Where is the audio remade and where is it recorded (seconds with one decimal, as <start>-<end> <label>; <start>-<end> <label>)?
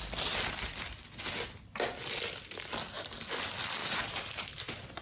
0.0-3.8 recorded; 3.8-5.0 remade